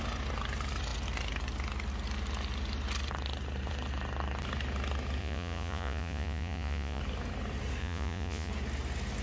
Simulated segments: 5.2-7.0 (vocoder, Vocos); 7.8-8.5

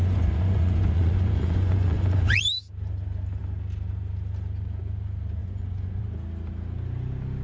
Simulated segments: 0.0-2.4 (vocoder, Vocos); 5.4-6.0

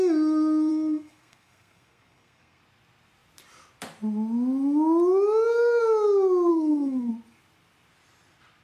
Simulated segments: 0.7-2.6 (codec, SNAC); 6.5-7.1

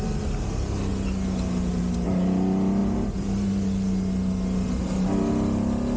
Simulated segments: none

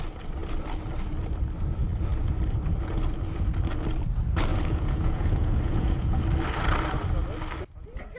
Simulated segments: 4.5-6.2 (vocoder, Vocos)

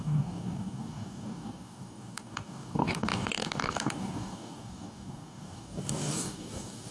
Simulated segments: 0.0-6.9 (codec, DAC)

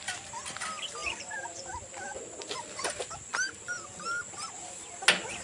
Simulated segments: 1.0-1.6 (vocoder, BigVGAN v2)

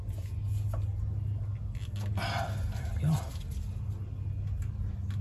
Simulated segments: none